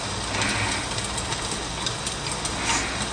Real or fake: real